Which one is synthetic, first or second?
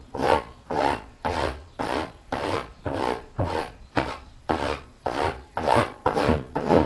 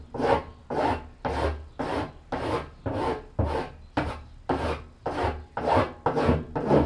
first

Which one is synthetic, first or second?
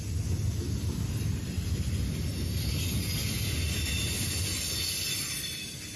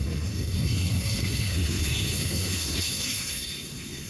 second